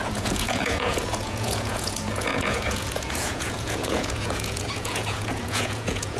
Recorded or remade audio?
remade